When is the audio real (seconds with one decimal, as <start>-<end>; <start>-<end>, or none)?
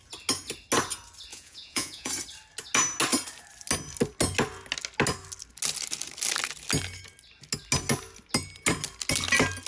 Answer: 0.0-1.3; 2.1-9.7